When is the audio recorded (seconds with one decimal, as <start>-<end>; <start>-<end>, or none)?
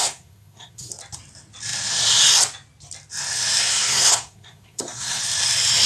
0.9-3.6; 5.2-5.9